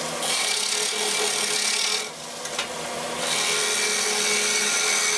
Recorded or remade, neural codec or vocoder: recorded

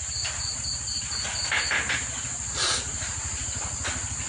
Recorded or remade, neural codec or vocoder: recorded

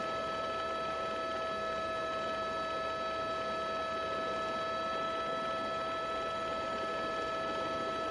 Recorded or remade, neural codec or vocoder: recorded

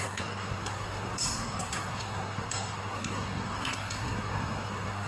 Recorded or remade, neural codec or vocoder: remade, codec, SNAC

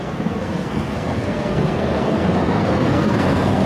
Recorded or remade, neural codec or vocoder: remade, codec, SNAC